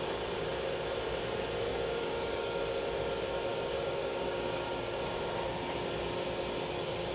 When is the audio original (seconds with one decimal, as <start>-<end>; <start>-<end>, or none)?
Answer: 0.0-1.7; 2.6-3.5; 4.7-7.1